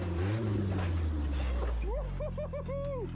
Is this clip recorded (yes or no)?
yes